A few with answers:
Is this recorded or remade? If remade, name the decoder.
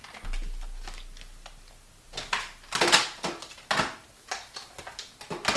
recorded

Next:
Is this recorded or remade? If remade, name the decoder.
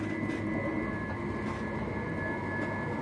recorded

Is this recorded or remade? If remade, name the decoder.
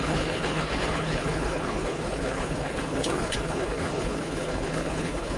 remade, codec, HILCodec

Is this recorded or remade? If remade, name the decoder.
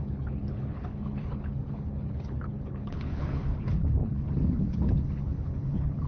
remade, codec, HILCodec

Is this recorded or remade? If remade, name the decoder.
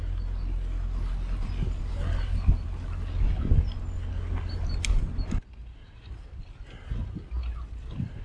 recorded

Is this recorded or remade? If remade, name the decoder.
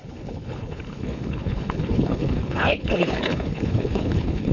remade, codec, HILCodec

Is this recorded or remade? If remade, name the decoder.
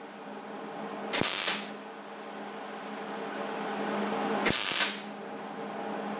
recorded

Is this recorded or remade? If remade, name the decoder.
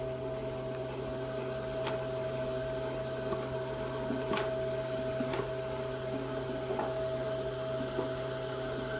recorded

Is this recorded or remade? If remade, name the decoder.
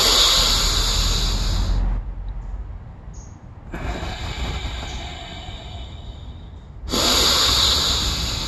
recorded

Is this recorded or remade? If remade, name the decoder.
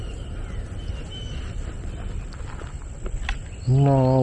recorded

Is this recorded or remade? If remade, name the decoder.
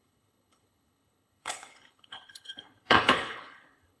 remade, codec, HILCodec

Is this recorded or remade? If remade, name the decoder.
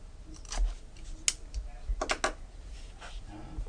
recorded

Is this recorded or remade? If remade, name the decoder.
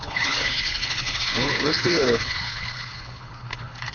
remade, codec, HILCodec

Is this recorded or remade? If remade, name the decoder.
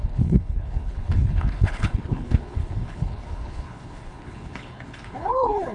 remade, codec, HILCodec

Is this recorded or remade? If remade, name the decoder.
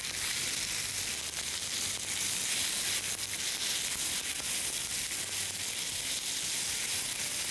recorded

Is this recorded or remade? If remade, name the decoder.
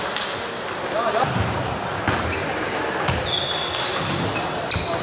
recorded